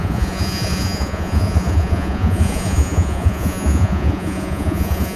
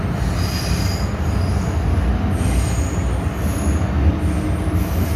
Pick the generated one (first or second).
first